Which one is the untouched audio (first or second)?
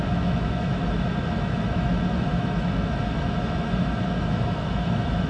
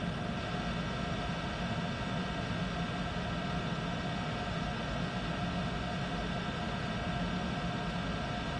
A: second